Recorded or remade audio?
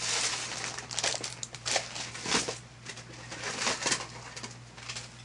recorded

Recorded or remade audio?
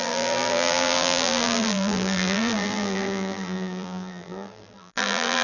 remade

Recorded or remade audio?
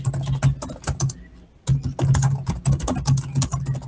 recorded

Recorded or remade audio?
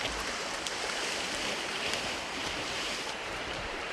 remade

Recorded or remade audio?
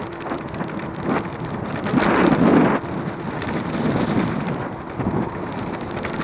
recorded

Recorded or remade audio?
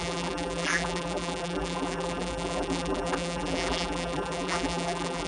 remade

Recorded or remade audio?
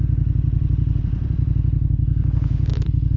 remade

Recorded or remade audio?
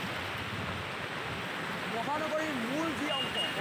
recorded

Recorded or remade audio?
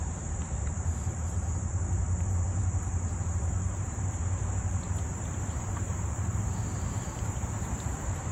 remade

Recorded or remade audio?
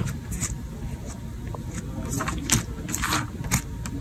recorded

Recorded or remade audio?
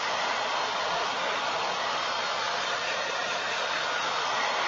recorded